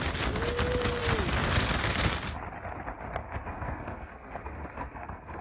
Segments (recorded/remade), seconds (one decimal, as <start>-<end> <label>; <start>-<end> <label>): 0.0-3.2 recorded; 3.2-5.4 remade